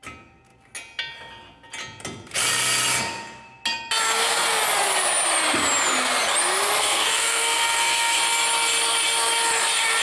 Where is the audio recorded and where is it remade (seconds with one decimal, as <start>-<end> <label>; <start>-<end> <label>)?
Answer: 0.0-6.8 recorded; 6.8-8.2 remade; 8.2-10.0 recorded